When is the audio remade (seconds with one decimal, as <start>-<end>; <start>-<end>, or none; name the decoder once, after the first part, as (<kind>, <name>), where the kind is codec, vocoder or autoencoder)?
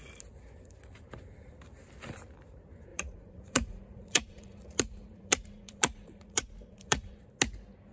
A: 2.9-7.2 (vocoder, Vocos)